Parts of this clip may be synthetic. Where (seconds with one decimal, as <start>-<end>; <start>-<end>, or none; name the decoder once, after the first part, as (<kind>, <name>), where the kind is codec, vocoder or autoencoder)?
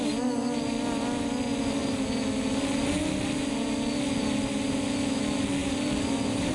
none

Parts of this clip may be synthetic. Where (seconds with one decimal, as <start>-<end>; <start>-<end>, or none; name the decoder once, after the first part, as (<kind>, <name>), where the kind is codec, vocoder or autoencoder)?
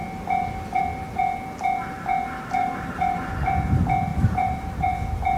2.6-3.5 (vocoder, BigVGAN v2); 4.1-4.9